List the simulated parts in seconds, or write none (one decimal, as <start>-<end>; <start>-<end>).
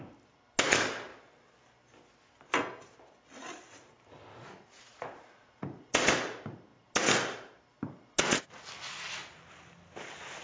4.3-6.1